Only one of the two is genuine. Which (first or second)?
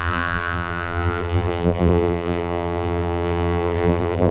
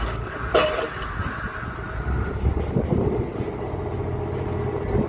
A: second